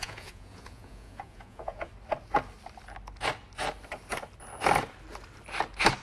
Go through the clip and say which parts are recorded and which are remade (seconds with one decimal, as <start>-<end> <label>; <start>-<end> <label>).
0.0-1.9 remade; 1.9-6.0 recorded

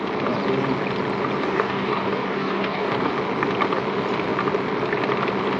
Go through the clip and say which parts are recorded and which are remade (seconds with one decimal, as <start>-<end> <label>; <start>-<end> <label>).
0.0-1.4 recorded; 1.4-3.1 remade; 3.1-5.6 recorded

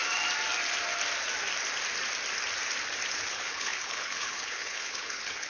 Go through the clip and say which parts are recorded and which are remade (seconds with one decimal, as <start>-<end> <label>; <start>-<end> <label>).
0.0-3.3 recorded; 3.3-5.5 remade

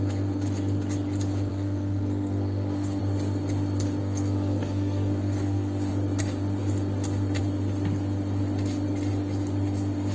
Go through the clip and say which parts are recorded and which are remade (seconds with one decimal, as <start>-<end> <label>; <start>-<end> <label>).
0.0-1.5 recorded; 1.5-3.0 remade; 3.0-4.0 recorded; 4.0-5.9 remade; 5.9-10.1 recorded

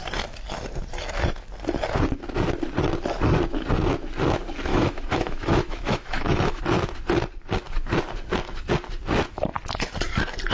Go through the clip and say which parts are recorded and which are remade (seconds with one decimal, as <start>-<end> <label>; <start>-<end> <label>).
0.0-4.7 recorded; 4.7-6.6 remade; 6.6-10.5 recorded

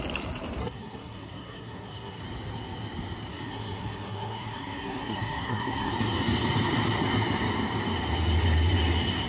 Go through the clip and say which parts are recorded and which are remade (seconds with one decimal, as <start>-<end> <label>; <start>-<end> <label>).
0.0-0.6 recorded; 0.6-2.2 remade; 2.2-3.3 recorded; 3.3-5.9 remade; 5.9-9.3 recorded